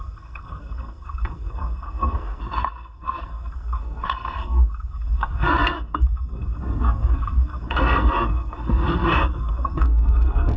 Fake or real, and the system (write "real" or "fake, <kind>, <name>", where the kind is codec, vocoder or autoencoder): fake, codec, SNAC